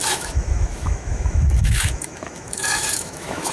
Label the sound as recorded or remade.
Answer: remade